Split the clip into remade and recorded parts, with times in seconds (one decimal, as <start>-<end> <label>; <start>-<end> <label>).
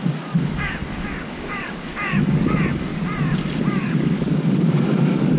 0.0-2.9 remade; 2.9-3.7 recorded; 3.7-5.4 remade